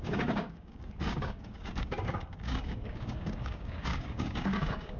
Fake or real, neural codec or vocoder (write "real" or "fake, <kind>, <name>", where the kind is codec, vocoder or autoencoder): fake, codec, DAC